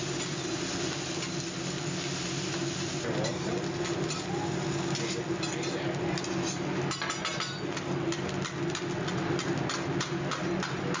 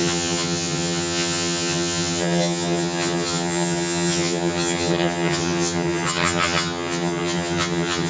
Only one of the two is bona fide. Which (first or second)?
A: first